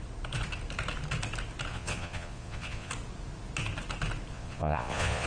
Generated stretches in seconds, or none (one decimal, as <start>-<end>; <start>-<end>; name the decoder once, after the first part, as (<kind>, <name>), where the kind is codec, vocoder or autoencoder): 1.7-2.9 (vocoder, Vocos); 4.3-5.3